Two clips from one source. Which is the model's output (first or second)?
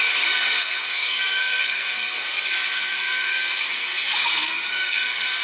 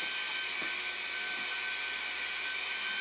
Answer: first